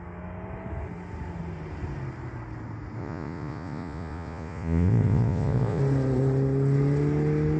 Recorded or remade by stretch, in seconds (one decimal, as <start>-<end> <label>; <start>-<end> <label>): 0.0-3.0 recorded; 3.0-5.8 remade; 5.8-7.6 recorded